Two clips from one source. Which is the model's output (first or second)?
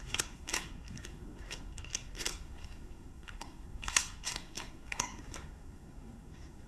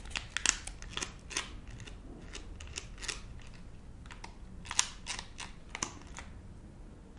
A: first